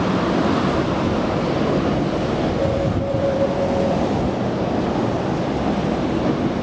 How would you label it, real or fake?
real